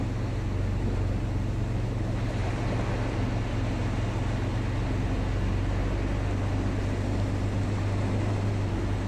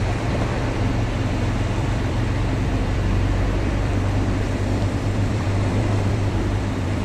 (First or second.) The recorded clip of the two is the first